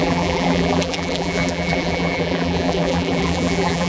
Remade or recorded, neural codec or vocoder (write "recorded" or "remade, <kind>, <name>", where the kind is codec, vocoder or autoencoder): remade, vocoder, BigVGAN v2